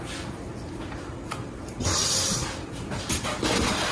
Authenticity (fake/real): real